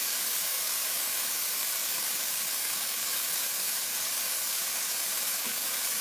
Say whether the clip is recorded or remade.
remade